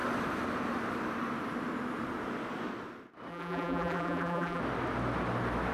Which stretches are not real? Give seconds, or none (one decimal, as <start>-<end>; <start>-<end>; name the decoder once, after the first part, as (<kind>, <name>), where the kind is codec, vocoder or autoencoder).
3.3-4.6 (vocoder, BigVGAN v2)